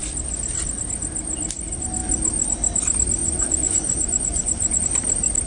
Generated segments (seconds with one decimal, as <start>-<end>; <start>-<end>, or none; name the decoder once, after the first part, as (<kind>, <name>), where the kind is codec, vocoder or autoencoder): 3.2-4.8 (vocoder, Vocos)